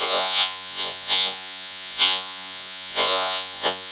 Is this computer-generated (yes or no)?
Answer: yes